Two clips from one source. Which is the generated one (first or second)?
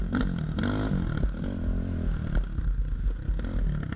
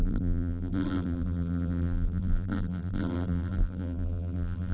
second